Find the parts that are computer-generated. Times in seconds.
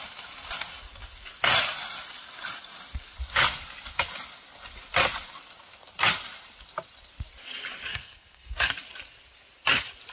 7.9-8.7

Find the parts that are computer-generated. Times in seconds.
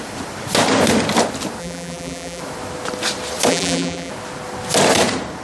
1.6-2.4; 3.5-4.1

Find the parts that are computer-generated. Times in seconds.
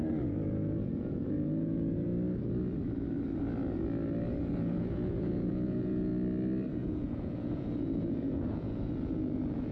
0.0-2.1; 4.4-6.1; 6.7-9.7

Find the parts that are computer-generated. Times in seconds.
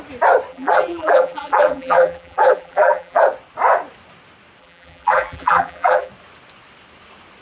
0.5-3.2; 4.6-6.1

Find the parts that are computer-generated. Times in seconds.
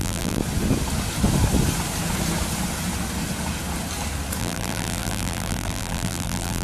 0.0-0.4; 4.4-6.6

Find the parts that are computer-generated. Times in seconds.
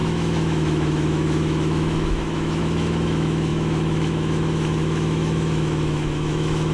0.0-6.7